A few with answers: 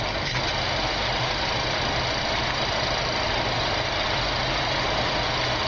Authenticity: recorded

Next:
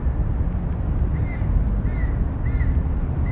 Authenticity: recorded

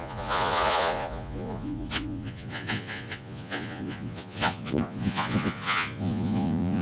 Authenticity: remade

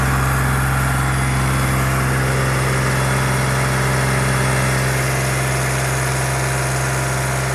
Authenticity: recorded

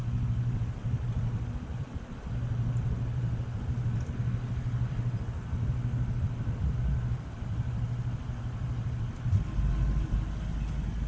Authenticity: recorded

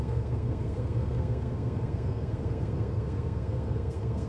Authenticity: remade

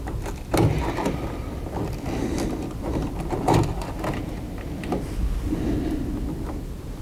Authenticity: recorded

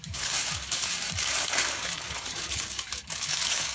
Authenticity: remade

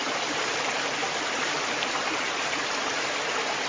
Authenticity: recorded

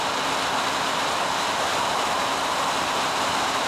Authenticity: recorded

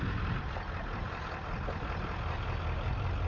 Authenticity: recorded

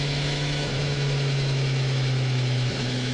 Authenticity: remade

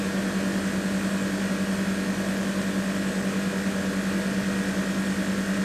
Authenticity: recorded